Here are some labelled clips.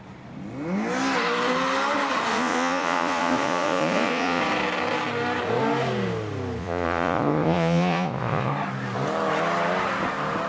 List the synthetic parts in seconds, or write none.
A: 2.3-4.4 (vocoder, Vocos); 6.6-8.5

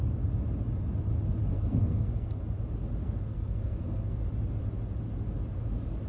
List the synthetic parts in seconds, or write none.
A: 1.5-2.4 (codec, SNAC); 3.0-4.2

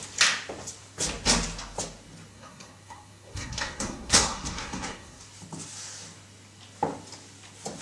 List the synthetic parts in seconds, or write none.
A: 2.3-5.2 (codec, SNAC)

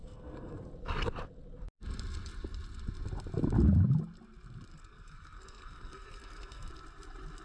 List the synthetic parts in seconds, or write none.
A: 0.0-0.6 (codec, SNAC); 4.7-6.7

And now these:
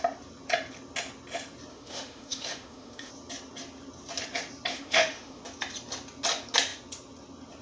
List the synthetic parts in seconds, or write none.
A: 1.7-3.1 (autoencoder, DAC-VAE); 4.7-5.4

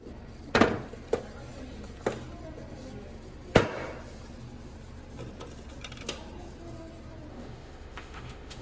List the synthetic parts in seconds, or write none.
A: 7.3-8.6 (autoencoder, DAC-VAE)